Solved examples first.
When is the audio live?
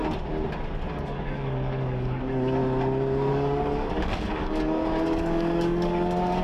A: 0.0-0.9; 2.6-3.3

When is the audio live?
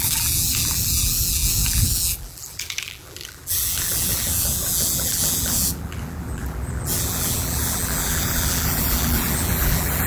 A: none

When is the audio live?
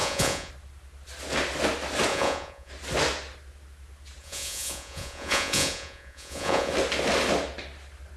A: 0.5-2.1; 2.7-4.2; 6.7-8.2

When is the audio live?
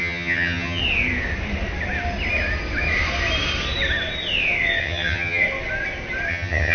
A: 0.8-4.8; 5.4-6.3